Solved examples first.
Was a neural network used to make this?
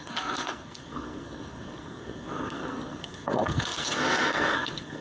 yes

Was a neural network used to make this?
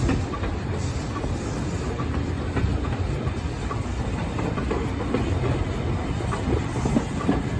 no